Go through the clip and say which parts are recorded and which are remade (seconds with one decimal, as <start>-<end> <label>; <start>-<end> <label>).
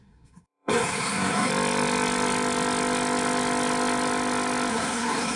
0.0-1.5 remade; 1.5-4.7 recorded; 4.7-5.4 remade